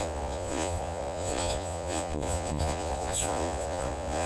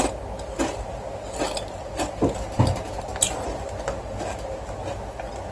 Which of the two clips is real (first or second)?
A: second